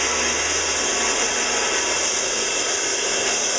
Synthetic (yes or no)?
no